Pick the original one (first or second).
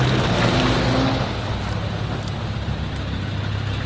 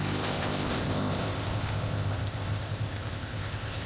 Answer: first